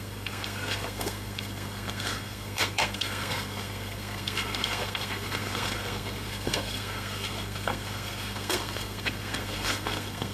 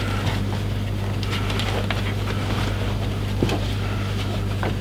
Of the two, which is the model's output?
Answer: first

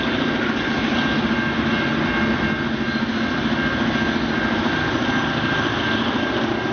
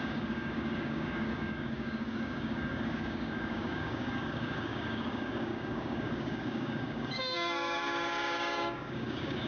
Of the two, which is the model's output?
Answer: second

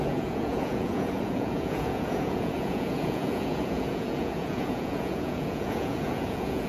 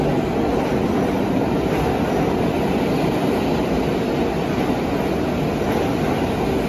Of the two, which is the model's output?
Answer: first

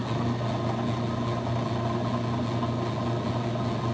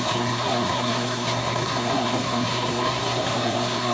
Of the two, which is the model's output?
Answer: second